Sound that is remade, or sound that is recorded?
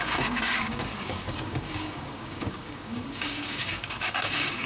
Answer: remade